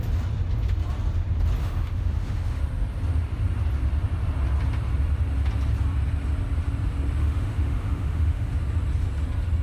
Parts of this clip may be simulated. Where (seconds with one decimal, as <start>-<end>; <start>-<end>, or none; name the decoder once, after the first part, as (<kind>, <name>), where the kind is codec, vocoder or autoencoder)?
1.6-2.6 (autoencoder, DAC-VAE); 7.2-8.5